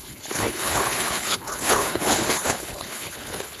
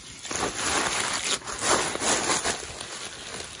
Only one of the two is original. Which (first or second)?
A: second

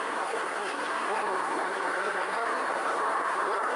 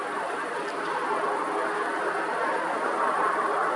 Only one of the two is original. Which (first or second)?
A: second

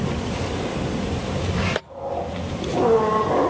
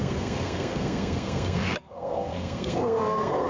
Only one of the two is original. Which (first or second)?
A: first